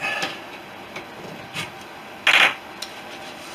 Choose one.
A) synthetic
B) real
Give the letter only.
B